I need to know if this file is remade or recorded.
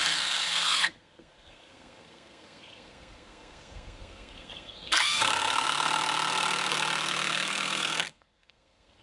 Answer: remade